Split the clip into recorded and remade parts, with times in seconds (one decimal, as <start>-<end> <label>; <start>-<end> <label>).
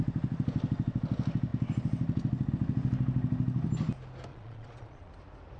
0.0-4.3 recorded; 4.3-5.1 remade; 5.1-5.6 recorded